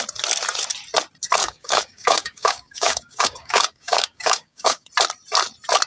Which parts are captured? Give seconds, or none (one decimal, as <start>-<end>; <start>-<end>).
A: 0.0-1.4; 4.9-5.9